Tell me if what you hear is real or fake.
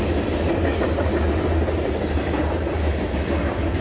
real